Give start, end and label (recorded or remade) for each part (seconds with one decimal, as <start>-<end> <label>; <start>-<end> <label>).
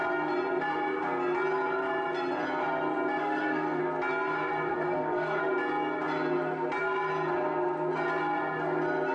0.0-3.2 recorded; 3.2-3.8 remade; 3.8-4.7 recorded; 4.7-5.4 remade; 5.4-9.1 recorded